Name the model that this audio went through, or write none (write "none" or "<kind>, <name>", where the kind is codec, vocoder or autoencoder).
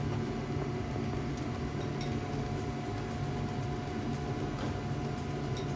none